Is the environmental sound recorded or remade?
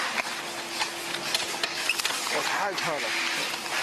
recorded